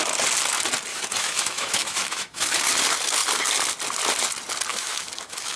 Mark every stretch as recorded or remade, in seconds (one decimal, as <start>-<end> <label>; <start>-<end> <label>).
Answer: 0.0-0.9 recorded; 0.9-2.5 remade; 2.5-4.7 recorded; 4.7-5.6 remade